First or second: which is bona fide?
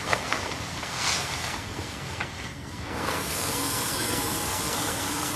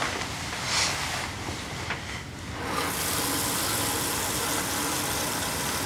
second